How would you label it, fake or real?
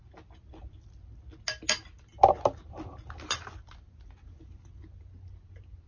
real